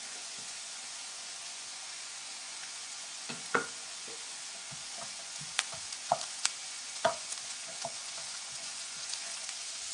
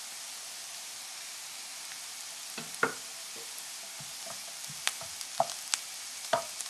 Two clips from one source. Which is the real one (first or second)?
second